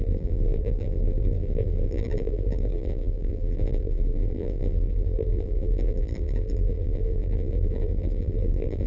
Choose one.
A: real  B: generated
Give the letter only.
B